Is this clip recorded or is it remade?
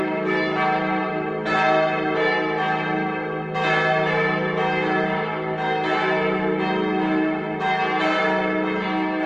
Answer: recorded